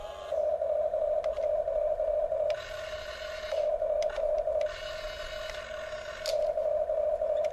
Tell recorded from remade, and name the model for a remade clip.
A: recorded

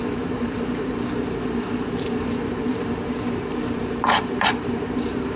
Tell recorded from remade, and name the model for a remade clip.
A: remade, vocoder, BigVGAN v2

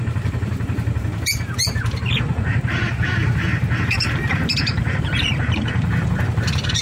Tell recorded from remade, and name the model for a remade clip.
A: remade, vocoder, BigVGAN v2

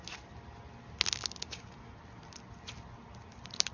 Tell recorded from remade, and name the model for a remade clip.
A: recorded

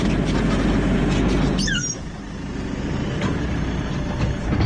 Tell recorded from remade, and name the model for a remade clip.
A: recorded